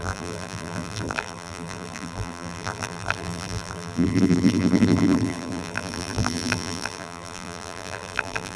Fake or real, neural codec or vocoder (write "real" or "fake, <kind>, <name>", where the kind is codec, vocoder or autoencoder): fake, vocoder, BigVGAN v2